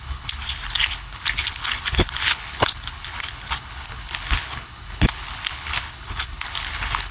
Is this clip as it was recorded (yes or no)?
no